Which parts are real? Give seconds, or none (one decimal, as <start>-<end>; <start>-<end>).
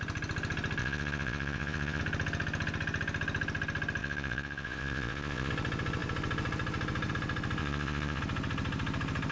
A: 0.0-0.8; 2.0-4.0; 5.5-7.6; 8.2-9.3